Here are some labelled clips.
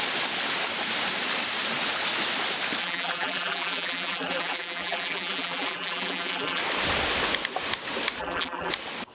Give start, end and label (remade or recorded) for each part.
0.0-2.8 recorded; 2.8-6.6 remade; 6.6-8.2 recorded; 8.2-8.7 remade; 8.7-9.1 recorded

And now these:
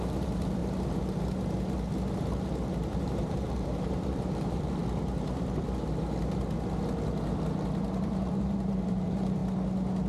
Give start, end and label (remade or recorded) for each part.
0.0-0.6 remade; 0.6-3.0 recorded; 3.0-4.8 remade; 4.8-8.2 recorded; 8.2-9.4 remade; 9.4-10.1 recorded

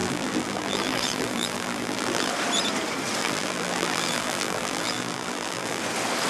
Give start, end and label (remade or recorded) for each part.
0.0-2.3 remade; 2.3-3.2 recorded; 3.2-5.8 remade; 5.8-6.3 recorded

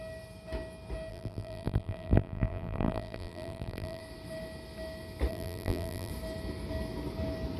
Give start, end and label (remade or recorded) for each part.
0.0-1.1 recorded; 1.1-4.0 remade; 4.0-5.3 recorded; 5.3-6.1 remade; 6.1-7.6 recorded